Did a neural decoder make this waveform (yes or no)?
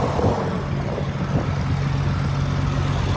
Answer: no